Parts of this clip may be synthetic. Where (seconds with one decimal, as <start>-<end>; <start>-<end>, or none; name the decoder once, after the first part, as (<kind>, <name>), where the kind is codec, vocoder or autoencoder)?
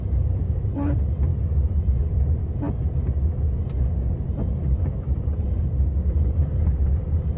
0.0-1.3 (vocoder, BigVGAN v2); 4.8-7.4